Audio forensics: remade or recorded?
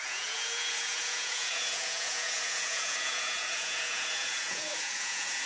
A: remade